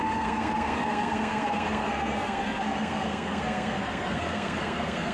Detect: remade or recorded remade